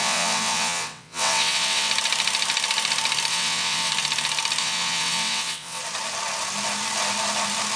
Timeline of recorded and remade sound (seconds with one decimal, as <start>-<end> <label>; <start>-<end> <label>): 0.0-1.9 remade; 1.9-3.3 recorded; 3.3-3.9 remade; 3.9-4.6 recorded; 4.6-5.8 remade; 5.8-7.8 recorded